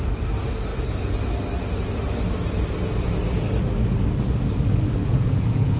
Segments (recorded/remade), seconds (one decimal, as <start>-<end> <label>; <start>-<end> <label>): 0.0-5.0 recorded; 5.0-5.8 remade